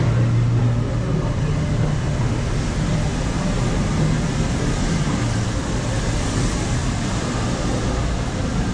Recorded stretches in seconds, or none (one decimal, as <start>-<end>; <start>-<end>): 0.0-8.7